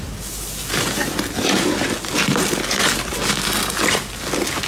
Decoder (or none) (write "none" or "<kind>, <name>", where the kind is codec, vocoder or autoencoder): none